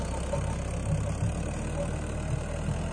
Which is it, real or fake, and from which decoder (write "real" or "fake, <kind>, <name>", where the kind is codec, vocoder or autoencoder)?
real